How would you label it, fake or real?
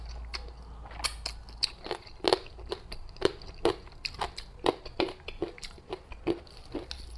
real